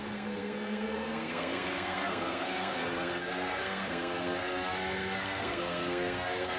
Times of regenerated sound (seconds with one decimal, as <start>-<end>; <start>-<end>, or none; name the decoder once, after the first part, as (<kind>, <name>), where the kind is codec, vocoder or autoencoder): 0.0-6.6 (codec, SNAC)